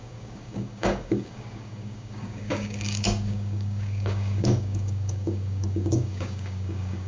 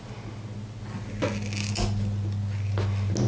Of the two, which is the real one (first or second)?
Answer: second